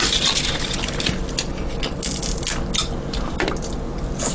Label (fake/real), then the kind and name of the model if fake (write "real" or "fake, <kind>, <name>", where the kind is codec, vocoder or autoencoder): real